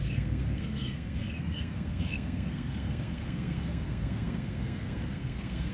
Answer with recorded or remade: remade